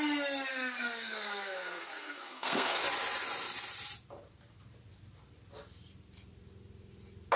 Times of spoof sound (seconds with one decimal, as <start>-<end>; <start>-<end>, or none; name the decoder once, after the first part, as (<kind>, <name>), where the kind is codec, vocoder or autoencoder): 0.5-2.8 (codec, SNAC)